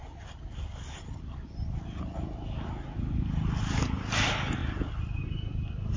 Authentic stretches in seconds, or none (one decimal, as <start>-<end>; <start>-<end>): 0.0-6.0